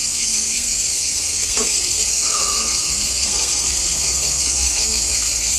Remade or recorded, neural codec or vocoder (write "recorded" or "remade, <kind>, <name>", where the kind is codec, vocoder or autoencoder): remade, codec, SNAC